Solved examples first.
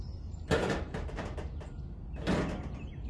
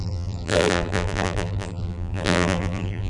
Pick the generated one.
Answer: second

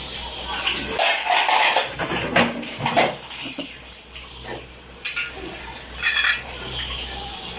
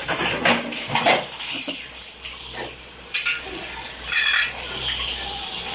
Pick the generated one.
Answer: second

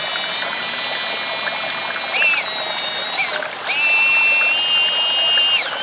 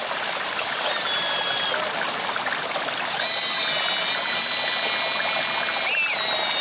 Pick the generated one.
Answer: second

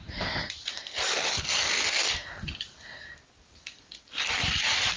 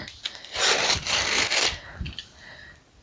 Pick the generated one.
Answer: first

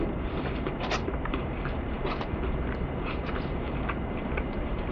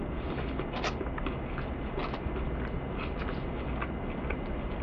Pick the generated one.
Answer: first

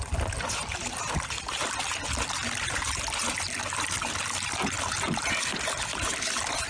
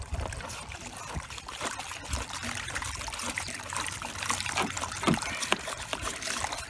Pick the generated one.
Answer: second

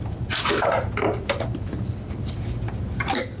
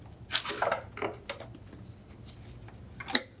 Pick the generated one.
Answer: first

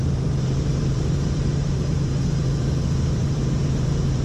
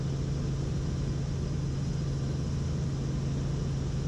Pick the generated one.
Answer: first